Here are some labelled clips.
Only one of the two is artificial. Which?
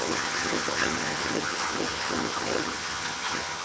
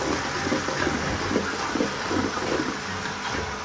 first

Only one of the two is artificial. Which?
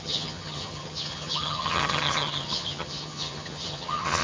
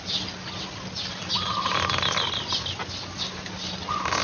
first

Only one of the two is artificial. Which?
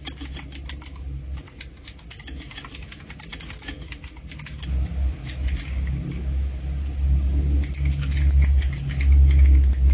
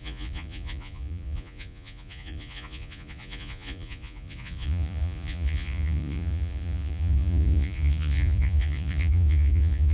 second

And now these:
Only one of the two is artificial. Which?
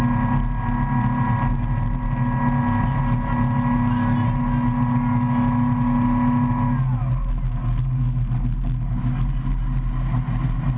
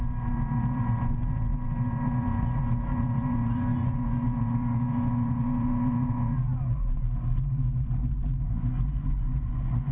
second